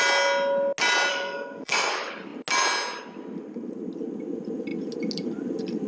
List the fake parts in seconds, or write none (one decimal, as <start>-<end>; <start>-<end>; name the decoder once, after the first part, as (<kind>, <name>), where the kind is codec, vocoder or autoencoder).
1.1-1.9 (codec, SNAC)

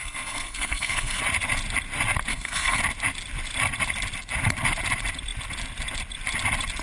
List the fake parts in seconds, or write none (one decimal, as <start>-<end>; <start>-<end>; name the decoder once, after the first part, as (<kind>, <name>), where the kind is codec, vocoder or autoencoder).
0.0-1.2 (codec, SNAC); 2.3-2.8

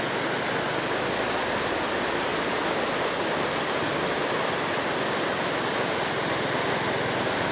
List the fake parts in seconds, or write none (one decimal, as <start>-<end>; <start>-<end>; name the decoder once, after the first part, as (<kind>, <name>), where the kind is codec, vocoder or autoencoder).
none

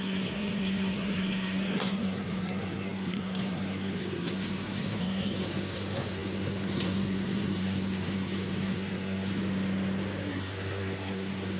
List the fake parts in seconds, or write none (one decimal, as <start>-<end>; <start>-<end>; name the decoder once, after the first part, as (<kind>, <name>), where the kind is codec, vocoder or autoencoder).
0.0-9.4 (codec, SNAC); 10.3-11.6

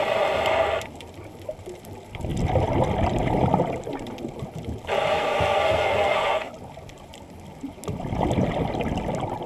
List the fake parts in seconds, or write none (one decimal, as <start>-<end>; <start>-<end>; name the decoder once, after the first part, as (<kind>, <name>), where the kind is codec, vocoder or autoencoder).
5.1-6.5 (codec, SNAC)

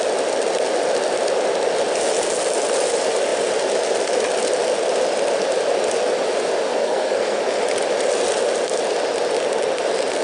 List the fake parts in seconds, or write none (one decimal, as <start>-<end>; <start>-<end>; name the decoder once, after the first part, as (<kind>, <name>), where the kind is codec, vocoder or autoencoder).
6.7-7.4 (codec, SNAC)

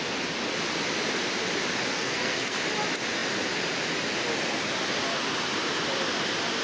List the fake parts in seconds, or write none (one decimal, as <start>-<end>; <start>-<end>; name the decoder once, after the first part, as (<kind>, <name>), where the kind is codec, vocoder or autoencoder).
1.9-2.6 (codec, SNAC)

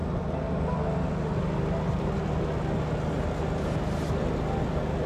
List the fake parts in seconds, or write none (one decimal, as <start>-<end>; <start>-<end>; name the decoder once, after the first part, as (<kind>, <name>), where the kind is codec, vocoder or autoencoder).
none